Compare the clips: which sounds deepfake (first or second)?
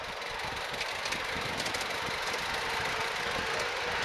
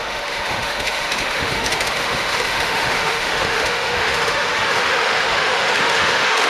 second